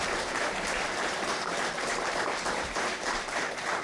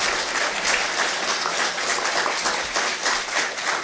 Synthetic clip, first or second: first